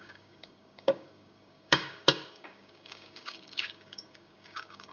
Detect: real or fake fake